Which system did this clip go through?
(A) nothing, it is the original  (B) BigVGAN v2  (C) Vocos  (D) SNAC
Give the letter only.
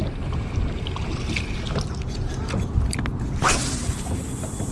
A